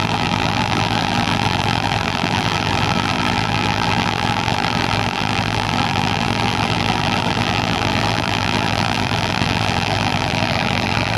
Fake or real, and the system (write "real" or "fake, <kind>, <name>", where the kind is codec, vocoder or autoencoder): fake, vocoder, BigVGAN v2